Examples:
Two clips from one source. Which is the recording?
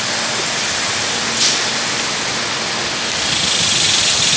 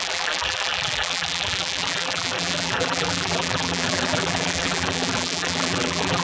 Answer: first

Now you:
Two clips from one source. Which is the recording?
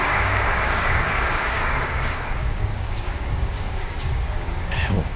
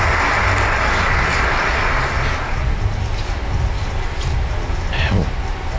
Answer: second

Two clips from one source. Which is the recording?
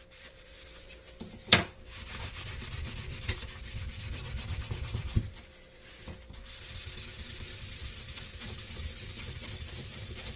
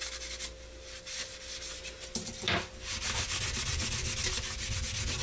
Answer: second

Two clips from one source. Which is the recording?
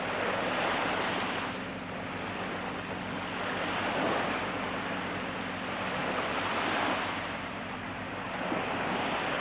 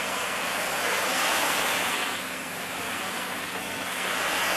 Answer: first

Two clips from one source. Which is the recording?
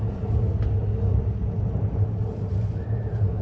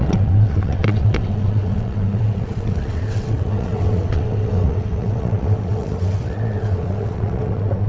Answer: first